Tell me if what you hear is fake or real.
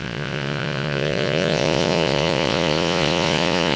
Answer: fake